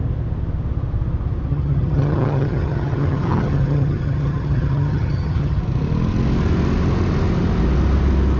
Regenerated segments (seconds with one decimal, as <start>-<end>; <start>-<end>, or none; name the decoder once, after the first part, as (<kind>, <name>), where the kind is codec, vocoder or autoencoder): 1.5-5.6 (vocoder, HiFi-GAN)